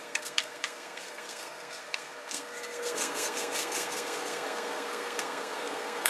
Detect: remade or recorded remade